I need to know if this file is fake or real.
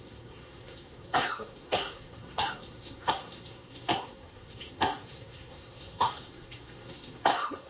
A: fake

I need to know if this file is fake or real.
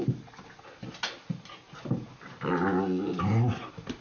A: real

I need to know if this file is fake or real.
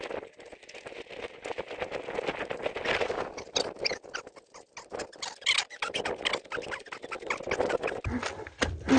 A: real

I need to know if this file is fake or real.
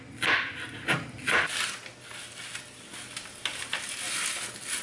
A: real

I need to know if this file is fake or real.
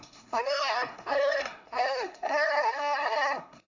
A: fake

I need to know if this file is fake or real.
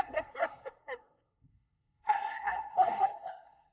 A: fake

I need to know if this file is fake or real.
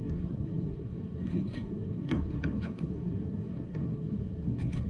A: fake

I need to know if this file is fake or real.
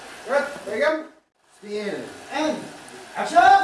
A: real